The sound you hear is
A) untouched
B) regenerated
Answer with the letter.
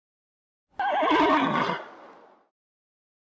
A